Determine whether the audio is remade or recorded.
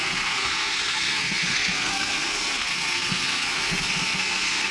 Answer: remade